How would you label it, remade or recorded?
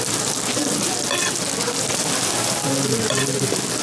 recorded